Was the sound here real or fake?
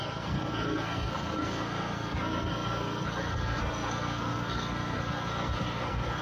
fake